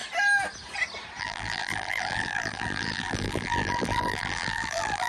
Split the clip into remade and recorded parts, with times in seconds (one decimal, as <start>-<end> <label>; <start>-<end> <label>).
0.0-1.2 recorded; 1.2-5.1 remade